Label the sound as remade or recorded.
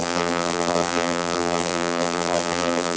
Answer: remade